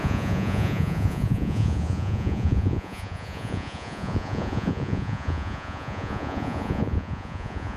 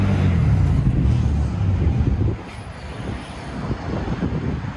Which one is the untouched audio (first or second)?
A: second